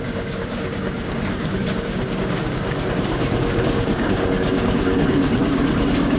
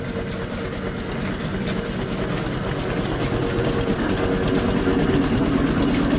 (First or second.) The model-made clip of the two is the first